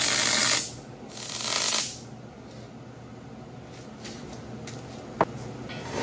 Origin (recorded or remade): recorded